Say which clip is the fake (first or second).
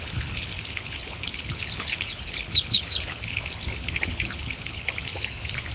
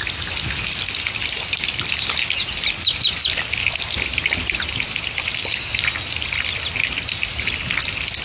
first